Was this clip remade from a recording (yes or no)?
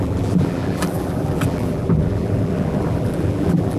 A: yes